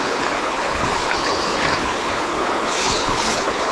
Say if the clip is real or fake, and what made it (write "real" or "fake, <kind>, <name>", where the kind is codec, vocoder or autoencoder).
fake, codec, HILCodec